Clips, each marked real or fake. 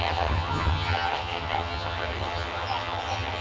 fake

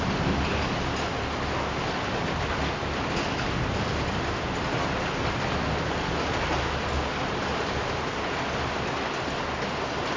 real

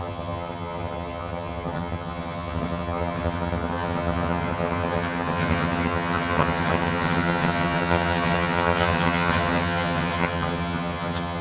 fake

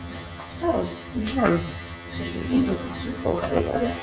fake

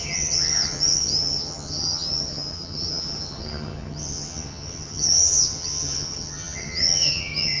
fake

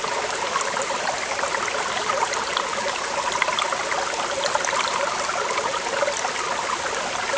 real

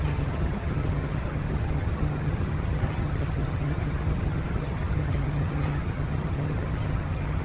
fake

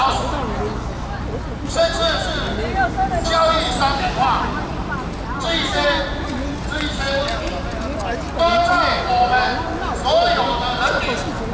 real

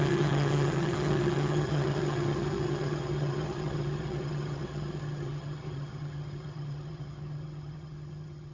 fake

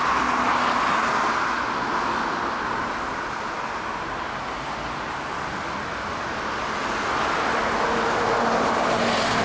real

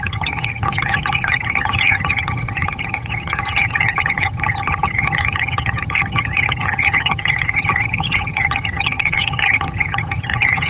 fake